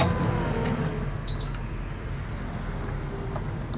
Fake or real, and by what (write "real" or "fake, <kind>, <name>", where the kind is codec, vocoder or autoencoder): real